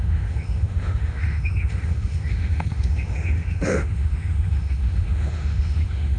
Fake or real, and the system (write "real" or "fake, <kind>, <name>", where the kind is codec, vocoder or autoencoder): fake, autoencoder, DAC-VAE